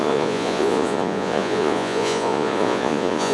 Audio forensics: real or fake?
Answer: fake